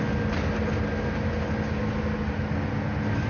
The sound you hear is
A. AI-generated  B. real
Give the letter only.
B